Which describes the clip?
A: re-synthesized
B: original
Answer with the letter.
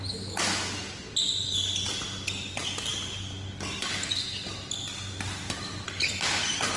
B